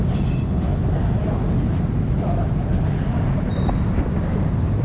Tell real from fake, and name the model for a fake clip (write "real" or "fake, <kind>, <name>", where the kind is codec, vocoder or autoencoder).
real